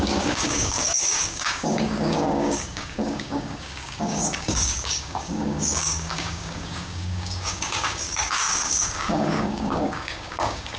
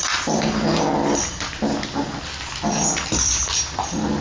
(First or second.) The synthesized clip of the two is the first